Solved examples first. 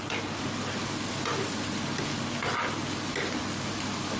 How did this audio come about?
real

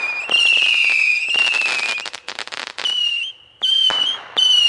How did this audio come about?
real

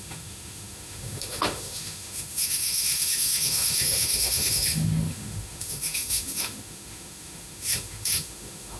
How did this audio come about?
fake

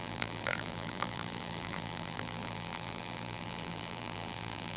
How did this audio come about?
fake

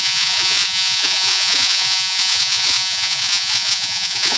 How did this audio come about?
fake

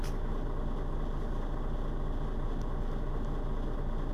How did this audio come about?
real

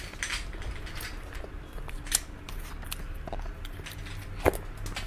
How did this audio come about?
real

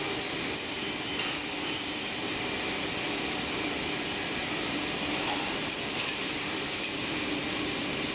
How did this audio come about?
fake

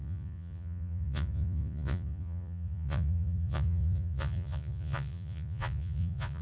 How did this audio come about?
fake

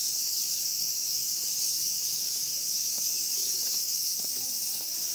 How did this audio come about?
fake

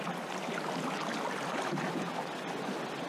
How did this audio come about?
real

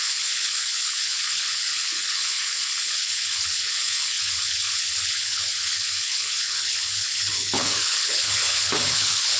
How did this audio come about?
fake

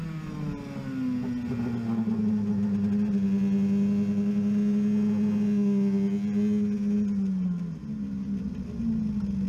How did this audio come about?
real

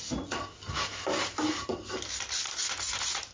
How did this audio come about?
real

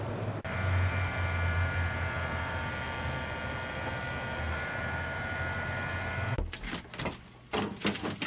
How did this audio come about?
real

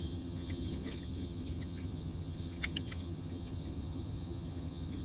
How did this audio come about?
fake